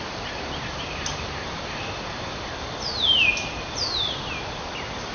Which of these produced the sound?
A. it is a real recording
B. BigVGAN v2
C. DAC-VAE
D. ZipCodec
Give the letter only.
A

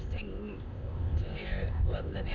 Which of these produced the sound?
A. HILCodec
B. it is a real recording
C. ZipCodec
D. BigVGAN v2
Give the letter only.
C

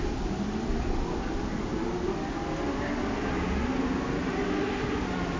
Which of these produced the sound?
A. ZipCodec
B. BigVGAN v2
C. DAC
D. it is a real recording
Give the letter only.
D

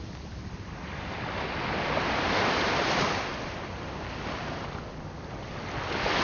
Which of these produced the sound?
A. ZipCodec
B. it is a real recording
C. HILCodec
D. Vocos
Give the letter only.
B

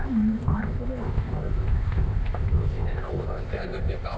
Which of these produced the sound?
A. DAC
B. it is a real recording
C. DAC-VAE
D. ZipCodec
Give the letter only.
D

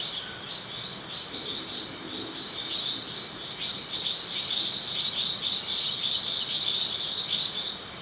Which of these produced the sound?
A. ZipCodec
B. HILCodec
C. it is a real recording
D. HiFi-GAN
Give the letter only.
C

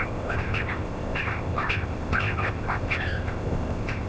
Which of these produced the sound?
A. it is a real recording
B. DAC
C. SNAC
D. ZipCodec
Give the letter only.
D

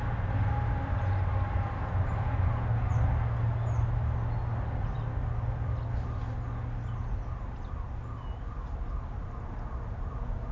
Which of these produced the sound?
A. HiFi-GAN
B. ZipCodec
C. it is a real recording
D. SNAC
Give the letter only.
C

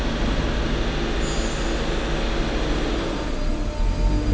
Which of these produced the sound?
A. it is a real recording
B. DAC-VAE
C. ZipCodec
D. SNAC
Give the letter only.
A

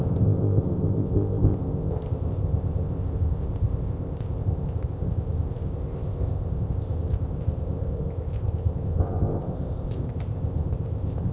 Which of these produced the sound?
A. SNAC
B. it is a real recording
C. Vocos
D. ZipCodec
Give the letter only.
D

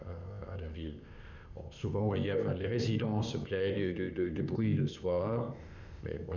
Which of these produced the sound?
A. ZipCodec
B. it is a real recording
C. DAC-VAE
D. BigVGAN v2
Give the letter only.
A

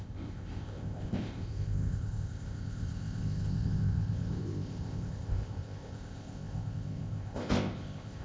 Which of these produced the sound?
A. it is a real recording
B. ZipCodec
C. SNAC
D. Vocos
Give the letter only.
B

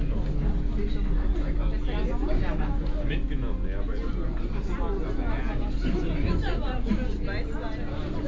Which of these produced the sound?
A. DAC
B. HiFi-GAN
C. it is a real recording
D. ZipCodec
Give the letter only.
C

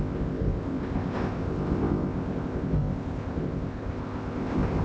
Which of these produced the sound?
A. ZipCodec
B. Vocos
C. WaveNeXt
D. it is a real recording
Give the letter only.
A